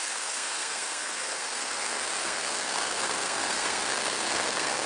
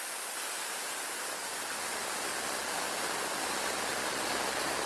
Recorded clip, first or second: second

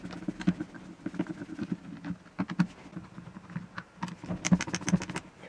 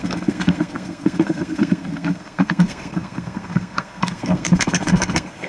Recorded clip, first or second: first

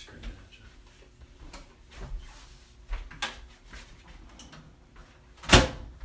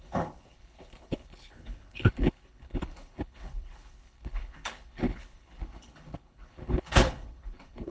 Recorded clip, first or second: first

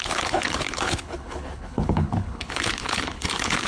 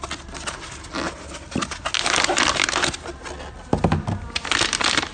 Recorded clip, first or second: second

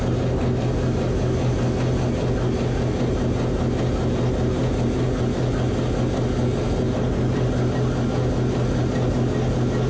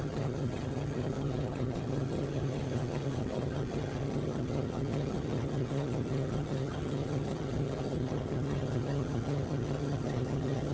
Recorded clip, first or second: first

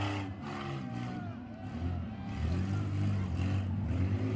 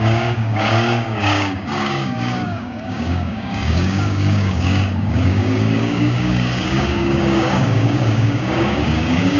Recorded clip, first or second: first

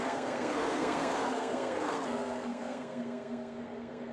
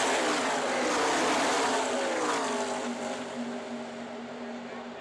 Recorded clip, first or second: second